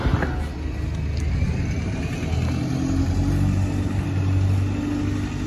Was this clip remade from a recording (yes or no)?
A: no